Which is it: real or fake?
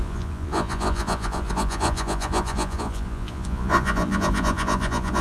fake